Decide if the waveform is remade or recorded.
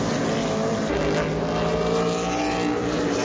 recorded